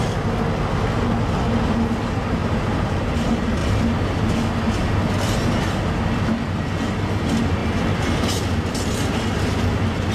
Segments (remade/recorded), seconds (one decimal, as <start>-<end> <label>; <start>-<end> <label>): 0.0-2.4 recorded; 2.4-3.1 remade; 3.1-3.6 recorded; 3.6-4.3 remade; 4.3-10.1 recorded